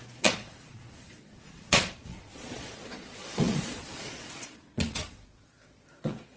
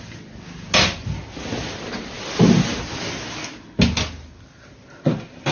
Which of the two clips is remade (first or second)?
first